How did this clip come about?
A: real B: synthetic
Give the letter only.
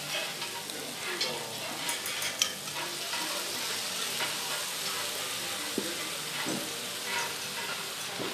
A